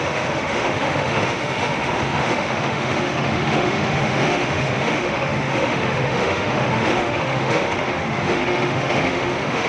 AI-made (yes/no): yes